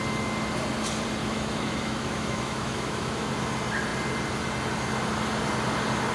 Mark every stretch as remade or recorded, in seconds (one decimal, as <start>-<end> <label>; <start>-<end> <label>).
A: 0.0-1.2 recorded; 1.2-3.3 remade; 3.3-6.1 recorded

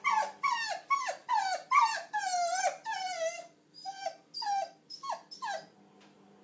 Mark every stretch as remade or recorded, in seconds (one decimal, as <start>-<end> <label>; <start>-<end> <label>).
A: 0.0-1.2 recorded; 1.2-5.0 remade; 5.0-6.4 recorded

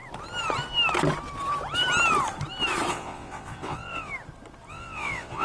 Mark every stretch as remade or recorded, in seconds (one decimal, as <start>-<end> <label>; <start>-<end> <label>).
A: 0.0-2.9 recorded; 2.9-4.1 remade; 4.1-4.7 recorded; 4.7-5.4 remade